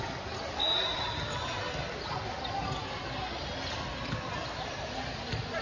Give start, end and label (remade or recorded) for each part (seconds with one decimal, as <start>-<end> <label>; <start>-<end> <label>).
0.0-5.6 recorded